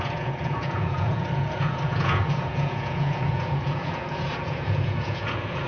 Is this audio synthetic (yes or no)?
yes